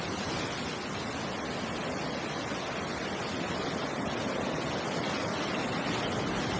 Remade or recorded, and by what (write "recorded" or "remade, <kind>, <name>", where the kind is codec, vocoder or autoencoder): recorded